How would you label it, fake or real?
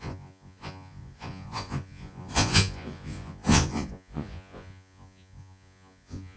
fake